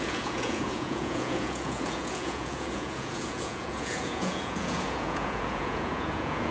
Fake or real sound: fake